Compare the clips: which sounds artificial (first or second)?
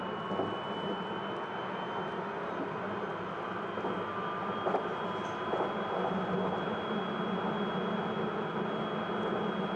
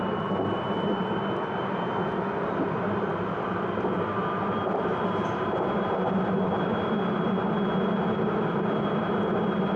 second